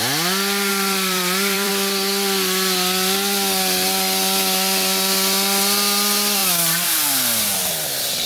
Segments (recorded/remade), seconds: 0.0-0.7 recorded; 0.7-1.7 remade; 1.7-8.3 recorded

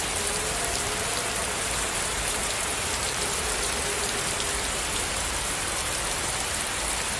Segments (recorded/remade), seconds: 0.0-1.4 recorded; 1.4-3.7 remade; 3.7-7.2 recorded

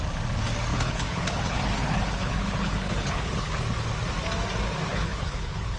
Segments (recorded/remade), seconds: 0.0-0.7 recorded; 0.7-3.6 remade; 3.6-4.9 recorded; 4.9-5.8 remade

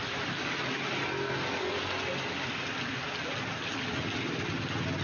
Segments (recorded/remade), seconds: 0.0-5.0 recorded

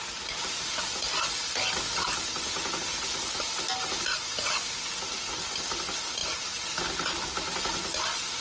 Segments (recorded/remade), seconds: 0.0-8.4 recorded

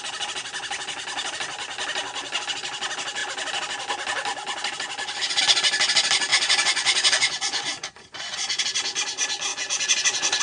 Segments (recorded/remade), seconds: 0.0-6.3 recorded; 6.3-8.6 remade; 8.6-9.5 recorded; 9.5-10.4 remade